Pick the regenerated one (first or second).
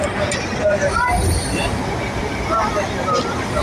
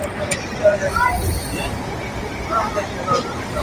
second